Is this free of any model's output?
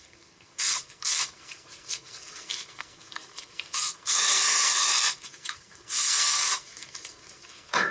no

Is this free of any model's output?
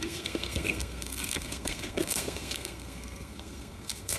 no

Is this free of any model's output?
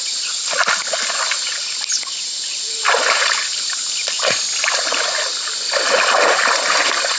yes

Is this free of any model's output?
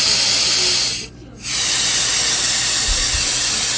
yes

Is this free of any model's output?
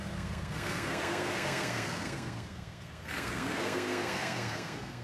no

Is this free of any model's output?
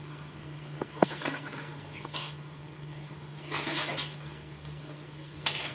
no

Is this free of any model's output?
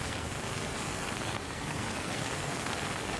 no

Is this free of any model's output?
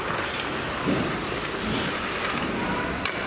yes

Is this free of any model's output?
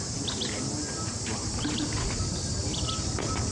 yes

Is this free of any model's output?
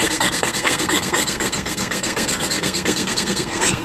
no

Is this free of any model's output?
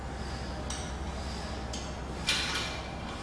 yes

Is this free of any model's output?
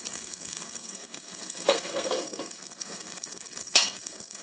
no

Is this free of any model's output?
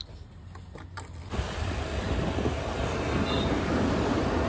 yes